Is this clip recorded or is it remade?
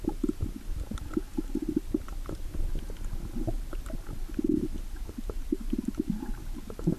recorded